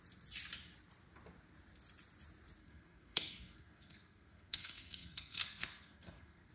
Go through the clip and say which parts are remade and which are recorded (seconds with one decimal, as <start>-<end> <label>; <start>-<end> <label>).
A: 0.0-2.6 recorded; 2.6-6.5 remade